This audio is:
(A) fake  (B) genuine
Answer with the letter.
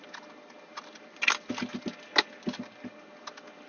B